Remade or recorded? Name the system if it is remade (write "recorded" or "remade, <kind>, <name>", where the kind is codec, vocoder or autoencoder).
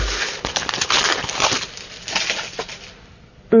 recorded